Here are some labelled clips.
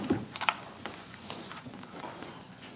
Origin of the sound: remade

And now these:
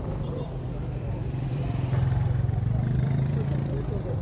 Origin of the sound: remade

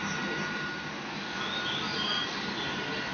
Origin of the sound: recorded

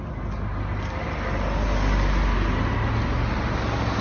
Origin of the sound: recorded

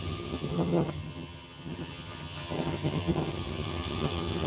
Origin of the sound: remade